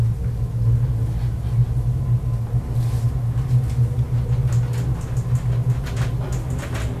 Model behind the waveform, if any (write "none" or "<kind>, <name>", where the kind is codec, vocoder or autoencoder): none